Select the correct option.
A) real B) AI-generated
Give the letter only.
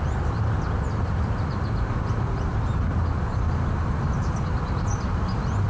A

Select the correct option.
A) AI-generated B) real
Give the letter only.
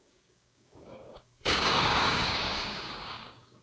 A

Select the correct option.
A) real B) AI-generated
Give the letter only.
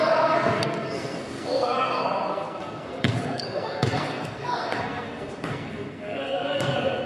B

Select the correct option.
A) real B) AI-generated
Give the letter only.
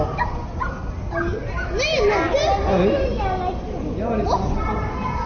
A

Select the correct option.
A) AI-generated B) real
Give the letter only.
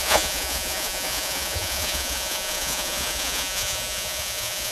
A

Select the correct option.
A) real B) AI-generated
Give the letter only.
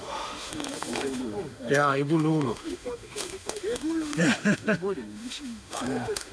B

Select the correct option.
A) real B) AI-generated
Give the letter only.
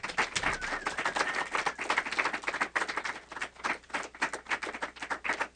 A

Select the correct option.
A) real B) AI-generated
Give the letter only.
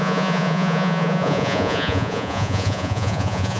B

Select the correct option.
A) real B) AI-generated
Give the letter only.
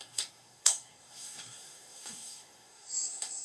B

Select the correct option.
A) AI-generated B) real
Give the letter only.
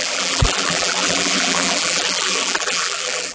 A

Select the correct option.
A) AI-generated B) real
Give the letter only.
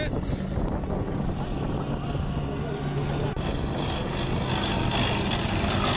B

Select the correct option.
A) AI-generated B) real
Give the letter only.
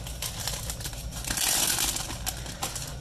B